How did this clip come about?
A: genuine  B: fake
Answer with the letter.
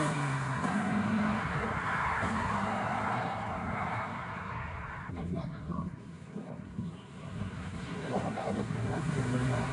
B